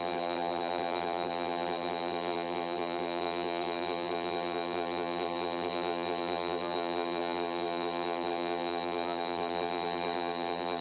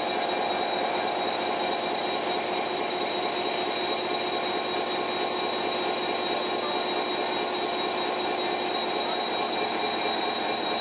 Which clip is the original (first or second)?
second